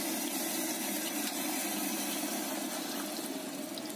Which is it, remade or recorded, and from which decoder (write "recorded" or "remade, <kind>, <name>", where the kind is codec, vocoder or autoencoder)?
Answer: recorded